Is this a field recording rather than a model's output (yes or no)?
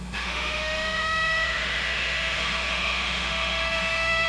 no